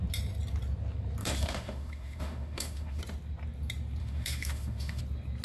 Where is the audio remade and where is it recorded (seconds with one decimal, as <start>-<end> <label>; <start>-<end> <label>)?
0.0-1.2 recorded; 1.2-3.0 remade; 3.0-4.0 recorded; 4.0-5.0 remade; 5.0-5.4 recorded